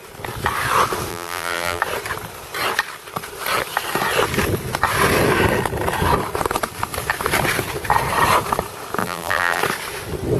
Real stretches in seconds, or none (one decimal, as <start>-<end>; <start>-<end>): 0.0-1.1; 1.8-9.0; 9.6-10.4